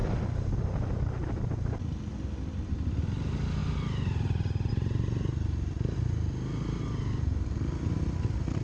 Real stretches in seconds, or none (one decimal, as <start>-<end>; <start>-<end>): 0.0-8.6

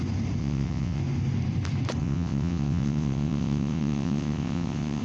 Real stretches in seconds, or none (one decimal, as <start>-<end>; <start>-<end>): 0.0-0.4; 1.0-2.0

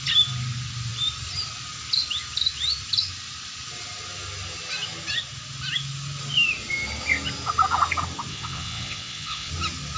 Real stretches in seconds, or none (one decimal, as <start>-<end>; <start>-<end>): 0.0-8.3; 9.5-10.0

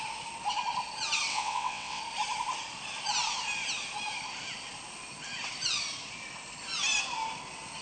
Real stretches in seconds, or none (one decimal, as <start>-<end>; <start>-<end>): 0.0-1.3; 2.0-7.8

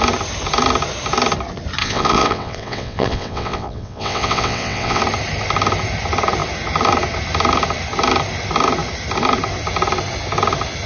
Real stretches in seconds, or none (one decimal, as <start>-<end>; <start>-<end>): 0.0-1.8; 5.0-10.9